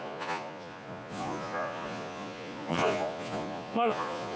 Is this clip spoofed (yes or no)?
yes